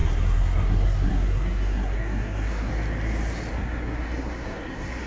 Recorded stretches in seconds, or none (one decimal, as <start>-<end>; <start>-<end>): 2.7-3.5